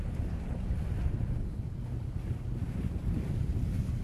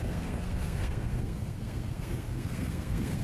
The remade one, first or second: second